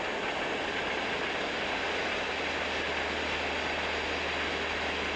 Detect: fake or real real